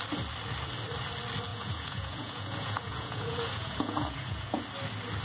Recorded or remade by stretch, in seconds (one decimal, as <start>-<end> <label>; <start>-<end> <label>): 0.0-1.5 recorded; 1.5-4.6 remade; 4.6-5.2 recorded